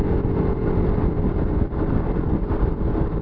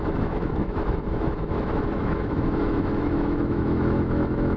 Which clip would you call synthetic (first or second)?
second